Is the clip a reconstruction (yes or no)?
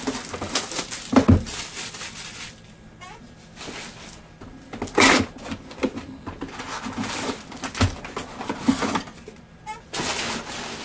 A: no